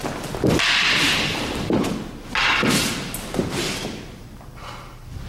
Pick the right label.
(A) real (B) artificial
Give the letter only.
A